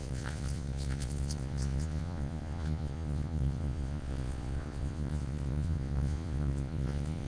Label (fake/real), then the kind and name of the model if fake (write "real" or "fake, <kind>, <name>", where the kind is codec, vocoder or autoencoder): fake, vocoder, Vocos